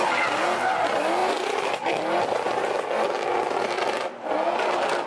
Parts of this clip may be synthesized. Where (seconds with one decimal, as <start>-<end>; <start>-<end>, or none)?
none